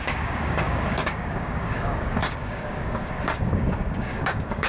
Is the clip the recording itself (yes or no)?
no